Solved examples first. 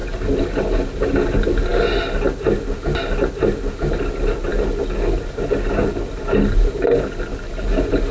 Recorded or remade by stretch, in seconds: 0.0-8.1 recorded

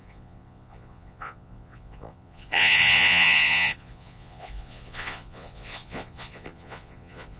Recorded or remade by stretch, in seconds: 0.0-7.4 remade

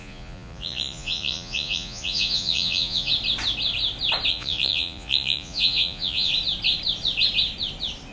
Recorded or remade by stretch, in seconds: 0.0-3.1 remade; 3.1-4.3 recorded; 4.3-6.3 remade; 6.3-8.1 recorded